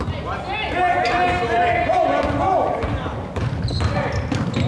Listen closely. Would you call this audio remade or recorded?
recorded